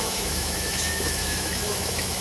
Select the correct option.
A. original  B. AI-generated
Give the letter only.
B